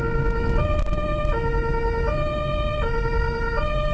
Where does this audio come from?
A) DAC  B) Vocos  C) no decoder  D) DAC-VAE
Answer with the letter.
C